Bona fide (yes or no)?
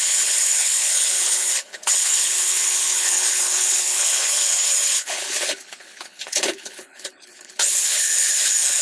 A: no